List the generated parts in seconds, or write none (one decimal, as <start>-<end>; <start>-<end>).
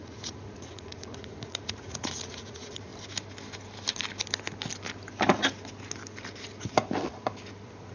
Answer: 0.0-2.9